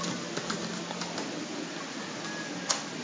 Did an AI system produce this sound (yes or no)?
no